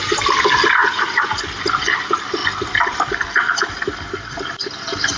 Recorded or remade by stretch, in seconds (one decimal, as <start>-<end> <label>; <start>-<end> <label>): 0.0-0.8 recorded; 0.8-1.3 remade; 1.3-5.2 recorded